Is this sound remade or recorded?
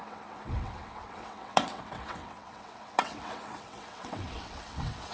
remade